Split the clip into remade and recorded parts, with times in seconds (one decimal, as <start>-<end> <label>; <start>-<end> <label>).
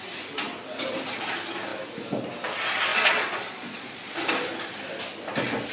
0.0-2.9 recorded; 2.9-4.2 remade; 4.2-5.7 recorded